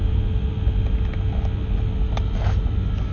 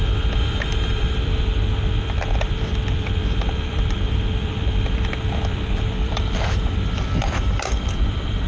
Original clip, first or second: first